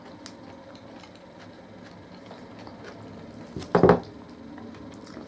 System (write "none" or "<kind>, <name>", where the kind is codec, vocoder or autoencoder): none